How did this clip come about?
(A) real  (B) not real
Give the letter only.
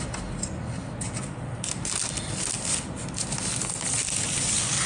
A